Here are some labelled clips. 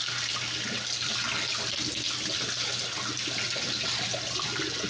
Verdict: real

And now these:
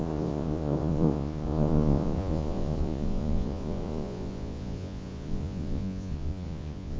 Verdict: fake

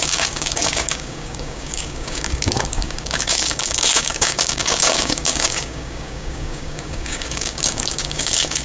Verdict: fake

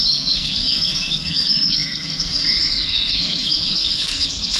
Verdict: fake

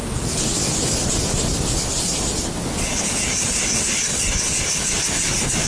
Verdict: real